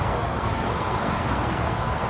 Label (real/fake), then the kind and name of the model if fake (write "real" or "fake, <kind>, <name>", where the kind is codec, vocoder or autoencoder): fake, codec, SNAC